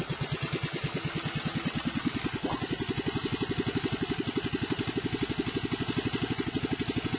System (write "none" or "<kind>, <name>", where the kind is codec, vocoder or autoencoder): none